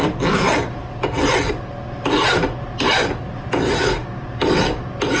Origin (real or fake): real